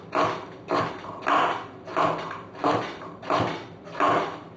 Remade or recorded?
recorded